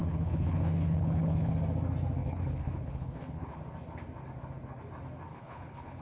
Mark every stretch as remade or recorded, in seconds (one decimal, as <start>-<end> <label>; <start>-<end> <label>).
0.0-1.5 remade; 1.5-2.2 recorded; 2.2-3.6 remade; 3.6-5.3 recorded; 5.3-6.0 remade

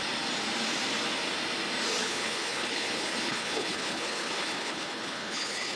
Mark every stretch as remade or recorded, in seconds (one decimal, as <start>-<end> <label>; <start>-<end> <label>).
0.0-2.0 recorded; 2.0-5.8 remade

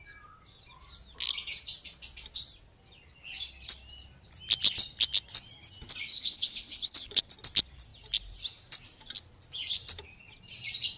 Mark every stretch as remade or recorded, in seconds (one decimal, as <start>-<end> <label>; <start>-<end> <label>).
0.0-6.1 recorded; 6.1-7.2 remade; 7.2-11.0 recorded

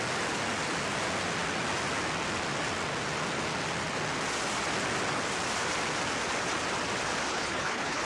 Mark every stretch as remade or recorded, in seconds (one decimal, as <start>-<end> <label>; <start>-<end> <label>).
0.0-7.3 recorded; 7.3-8.0 remade

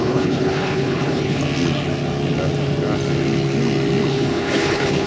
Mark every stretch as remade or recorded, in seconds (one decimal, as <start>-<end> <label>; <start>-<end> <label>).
0.0-1.4 remade; 1.4-4.1 recorded; 4.1-5.1 remade

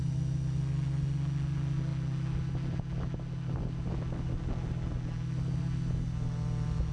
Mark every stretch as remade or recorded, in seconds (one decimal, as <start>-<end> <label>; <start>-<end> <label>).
0.0-6.9 recorded